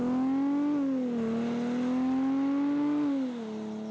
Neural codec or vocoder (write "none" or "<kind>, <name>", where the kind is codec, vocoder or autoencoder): none